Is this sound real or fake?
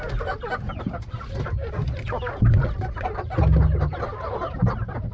real